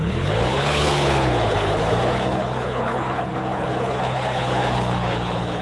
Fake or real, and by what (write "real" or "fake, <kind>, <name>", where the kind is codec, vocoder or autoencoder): fake, codec, HILCodec